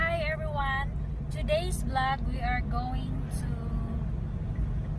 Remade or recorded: recorded